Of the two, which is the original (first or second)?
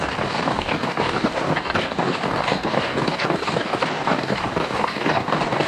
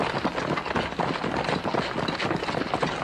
second